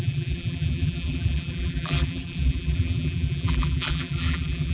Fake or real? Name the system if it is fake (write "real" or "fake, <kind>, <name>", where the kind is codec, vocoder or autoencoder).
fake, vocoder, BigVGAN v2